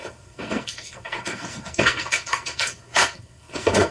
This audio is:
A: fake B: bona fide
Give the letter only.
A